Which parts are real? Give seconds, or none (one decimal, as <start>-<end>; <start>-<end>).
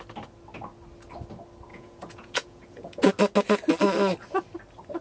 0.0-1.7; 3.1-5.0